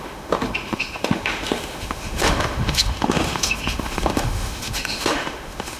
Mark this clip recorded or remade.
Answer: remade